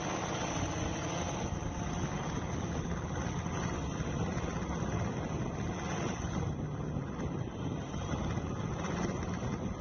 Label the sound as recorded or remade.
recorded